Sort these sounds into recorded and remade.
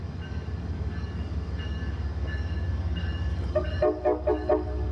remade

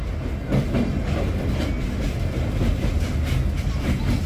recorded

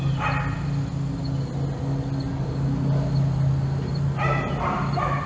recorded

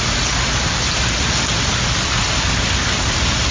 recorded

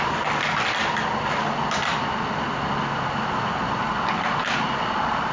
recorded